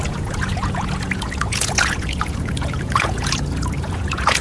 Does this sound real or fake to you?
fake